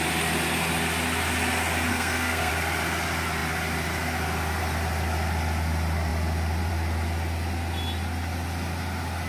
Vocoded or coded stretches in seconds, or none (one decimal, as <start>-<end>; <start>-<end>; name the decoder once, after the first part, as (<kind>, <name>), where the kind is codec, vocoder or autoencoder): 1.9-2.5 (codec, SNAC)